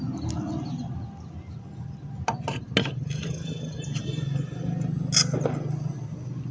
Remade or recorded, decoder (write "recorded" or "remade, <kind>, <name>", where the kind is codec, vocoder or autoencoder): recorded